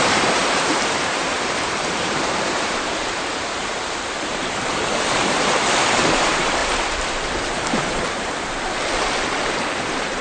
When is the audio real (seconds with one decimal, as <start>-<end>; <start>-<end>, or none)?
6.6-7.3